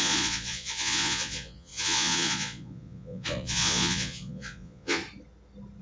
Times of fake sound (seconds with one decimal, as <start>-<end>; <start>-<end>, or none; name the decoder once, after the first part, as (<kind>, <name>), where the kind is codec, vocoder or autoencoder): 0.0-5.0 (vocoder, Vocos)